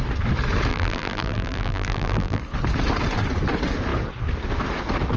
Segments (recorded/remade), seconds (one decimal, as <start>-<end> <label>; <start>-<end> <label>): 0.0-0.7 recorded; 0.7-2.4 remade; 2.4-5.2 recorded